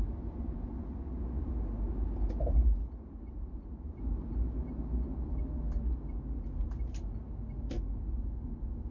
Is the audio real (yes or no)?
yes